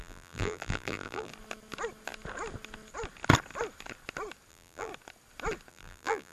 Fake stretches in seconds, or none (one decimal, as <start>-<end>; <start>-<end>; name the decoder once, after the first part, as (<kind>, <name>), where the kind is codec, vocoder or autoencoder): 0.0-1.3 (vocoder, BigVGAN v2); 4.5-4.9; 5.7-6.3